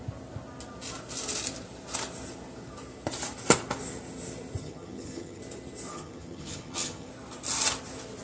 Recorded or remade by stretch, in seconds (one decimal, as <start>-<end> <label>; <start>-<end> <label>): 0.0-4.6 recorded; 4.6-5.4 remade; 5.4-5.9 recorded; 5.9-7.1 remade; 7.1-8.2 recorded